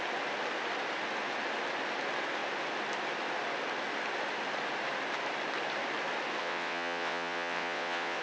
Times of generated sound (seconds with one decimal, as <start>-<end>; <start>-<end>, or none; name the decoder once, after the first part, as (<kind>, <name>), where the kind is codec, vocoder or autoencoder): 6.4-8.2 (vocoder, WaveNeXt)